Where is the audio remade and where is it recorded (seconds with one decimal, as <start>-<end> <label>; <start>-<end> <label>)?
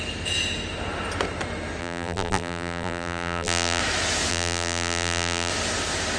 0.0-1.8 recorded; 1.8-3.8 remade; 3.8-4.3 recorded; 4.3-5.5 remade; 5.5-6.2 recorded